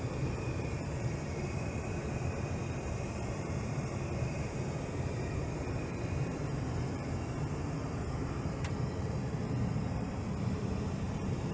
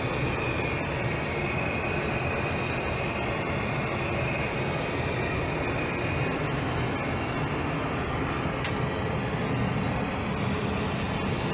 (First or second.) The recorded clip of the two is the second